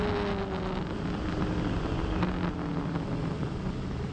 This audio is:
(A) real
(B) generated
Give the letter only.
A